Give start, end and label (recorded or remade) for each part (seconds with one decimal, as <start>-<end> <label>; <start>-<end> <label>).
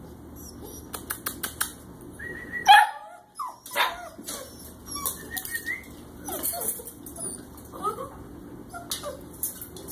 0.0-9.9 recorded